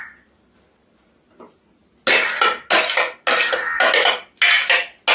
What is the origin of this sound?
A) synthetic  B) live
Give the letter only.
B